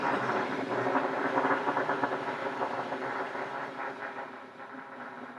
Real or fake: fake